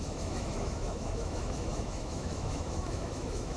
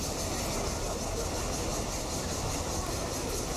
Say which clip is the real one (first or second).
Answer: second